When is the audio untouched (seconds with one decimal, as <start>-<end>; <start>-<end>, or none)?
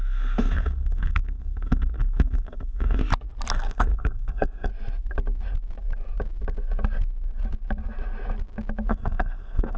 3.0-3.5; 4.7-8.9